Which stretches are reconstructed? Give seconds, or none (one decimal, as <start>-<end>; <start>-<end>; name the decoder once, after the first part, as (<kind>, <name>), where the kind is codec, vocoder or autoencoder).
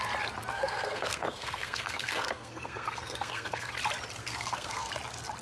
0.5-3.7 (codec, SNAC); 4.2-4.9